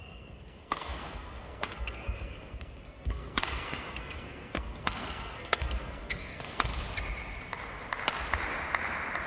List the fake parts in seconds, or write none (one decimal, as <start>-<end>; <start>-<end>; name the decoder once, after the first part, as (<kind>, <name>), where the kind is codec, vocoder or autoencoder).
0.0-6.7 (codec, SNAC)